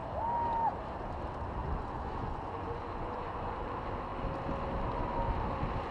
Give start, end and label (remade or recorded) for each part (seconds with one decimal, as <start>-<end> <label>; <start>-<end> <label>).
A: 0.0-1.6 recorded; 1.6-3.5 remade; 3.5-5.9 recorded